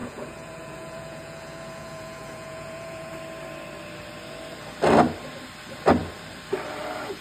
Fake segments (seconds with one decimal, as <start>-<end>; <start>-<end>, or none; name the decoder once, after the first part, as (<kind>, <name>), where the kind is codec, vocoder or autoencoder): 0.0-3.1 (vocoder, Vocos)